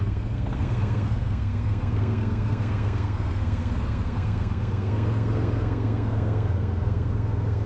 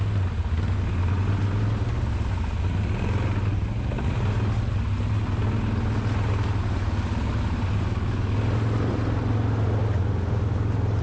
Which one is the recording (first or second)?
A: second